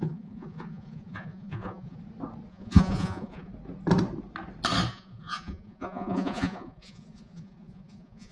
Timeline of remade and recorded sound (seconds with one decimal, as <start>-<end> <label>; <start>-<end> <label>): 0.0-2.0 remade; 2.0-2.5 recorded; 2.5-3.5 remade; 3.5-4.9 recorded; 4.9-8.3 remade